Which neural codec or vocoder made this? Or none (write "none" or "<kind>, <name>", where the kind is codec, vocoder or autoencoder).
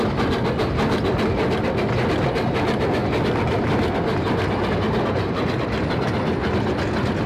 none